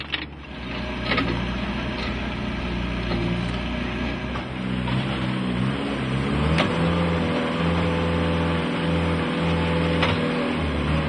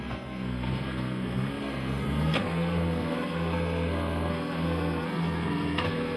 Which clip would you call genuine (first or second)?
first